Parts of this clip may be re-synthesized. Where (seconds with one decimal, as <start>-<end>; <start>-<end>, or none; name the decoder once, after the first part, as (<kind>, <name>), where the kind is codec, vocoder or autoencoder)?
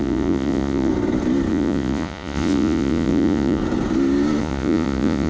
0.0-0.9 (vocoder, Vocos); 1.5-3.6; 4.4-5.3